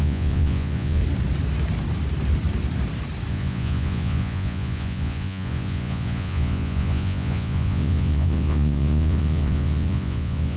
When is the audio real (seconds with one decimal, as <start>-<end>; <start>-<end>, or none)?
1.0-3.3

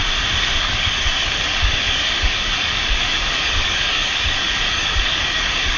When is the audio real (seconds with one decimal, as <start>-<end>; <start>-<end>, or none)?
0.0-0.6

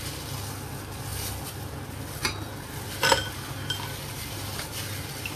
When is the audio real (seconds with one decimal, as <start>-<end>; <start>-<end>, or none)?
0.0-5.4

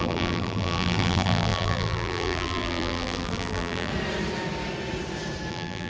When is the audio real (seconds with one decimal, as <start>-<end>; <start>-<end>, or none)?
3.9-5.5

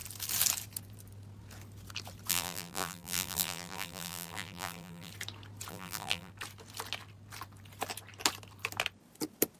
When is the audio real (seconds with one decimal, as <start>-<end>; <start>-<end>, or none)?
0.0-2.3; 5.1-5.7; 6.3-9.6

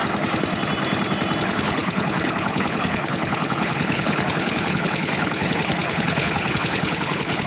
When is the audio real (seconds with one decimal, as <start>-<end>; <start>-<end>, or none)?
0.0-1.4